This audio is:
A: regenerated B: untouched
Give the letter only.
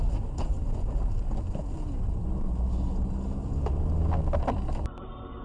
B